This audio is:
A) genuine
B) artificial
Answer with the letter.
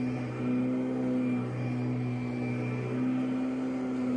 A